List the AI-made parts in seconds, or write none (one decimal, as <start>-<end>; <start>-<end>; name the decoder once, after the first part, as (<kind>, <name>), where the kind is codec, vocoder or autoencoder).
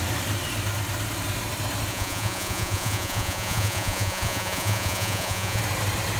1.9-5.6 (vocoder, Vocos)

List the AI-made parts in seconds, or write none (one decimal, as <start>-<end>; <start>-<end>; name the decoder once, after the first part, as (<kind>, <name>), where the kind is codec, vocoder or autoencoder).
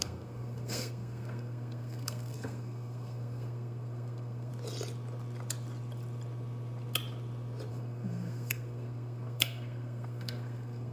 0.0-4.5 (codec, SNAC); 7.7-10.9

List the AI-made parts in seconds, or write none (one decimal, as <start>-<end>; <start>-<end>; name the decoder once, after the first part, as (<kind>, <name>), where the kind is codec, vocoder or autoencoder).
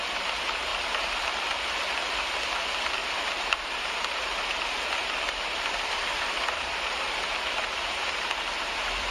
0.7-1.8 (vocoder, BigVGAN v2); 3.0-8.3